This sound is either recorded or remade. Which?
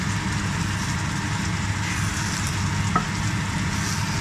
recorded